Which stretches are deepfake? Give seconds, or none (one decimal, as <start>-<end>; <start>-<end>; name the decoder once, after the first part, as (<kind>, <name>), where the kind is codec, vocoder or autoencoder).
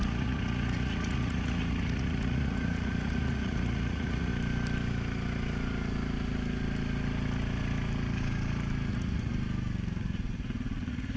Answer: 0.0-4.3 (vocoder, Vocos); 8.9-9.3; 10.0-11.2